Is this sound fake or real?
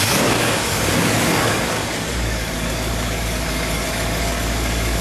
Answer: fake